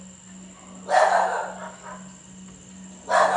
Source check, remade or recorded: recorded